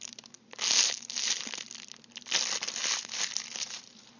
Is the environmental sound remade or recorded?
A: recorded